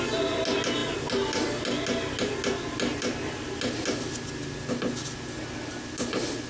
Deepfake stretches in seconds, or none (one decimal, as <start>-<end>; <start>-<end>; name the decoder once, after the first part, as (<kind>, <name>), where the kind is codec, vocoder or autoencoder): none